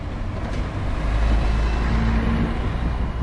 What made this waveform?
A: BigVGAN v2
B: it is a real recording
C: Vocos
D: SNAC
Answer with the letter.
B